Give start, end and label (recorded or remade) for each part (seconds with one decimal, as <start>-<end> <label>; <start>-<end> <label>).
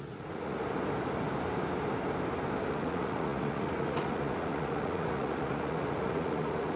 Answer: 0.0-0.6 remade; 0.6-2.7 recorded; 2.7-6.8 remade